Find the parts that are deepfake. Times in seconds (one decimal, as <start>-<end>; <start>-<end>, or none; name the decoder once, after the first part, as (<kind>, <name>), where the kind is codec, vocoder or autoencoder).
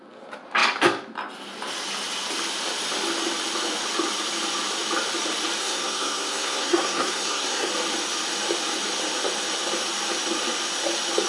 5.6-7.7 (codec, SNAC)